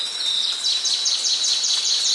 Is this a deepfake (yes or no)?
no